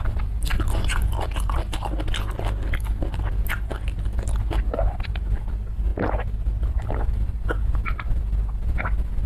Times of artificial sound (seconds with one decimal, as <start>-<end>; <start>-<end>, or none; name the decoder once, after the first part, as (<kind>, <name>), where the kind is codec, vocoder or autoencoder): 0.0-0.5 (vocoder, BigVGAN v2); 4.6-5.9; 6.7-9.3